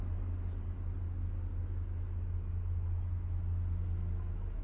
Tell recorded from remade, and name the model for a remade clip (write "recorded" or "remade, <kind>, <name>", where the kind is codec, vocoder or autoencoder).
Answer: recorded